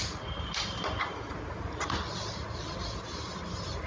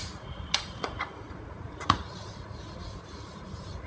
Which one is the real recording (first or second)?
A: first